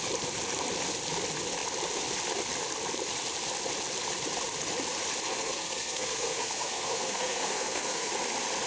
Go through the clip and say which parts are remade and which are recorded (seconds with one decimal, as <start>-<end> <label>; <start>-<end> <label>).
0.0-5.3 recorded; 5.3-8.1 remade; 8.1-8.7 recorded